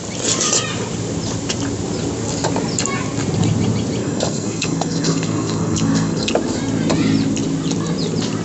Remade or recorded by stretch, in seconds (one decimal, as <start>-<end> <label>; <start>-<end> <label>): 0.0-4.0 recorded; 4.0-6.3 remade; 6.3-8.4 recorded